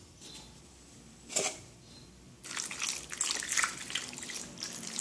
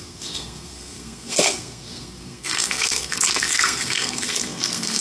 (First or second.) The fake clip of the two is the second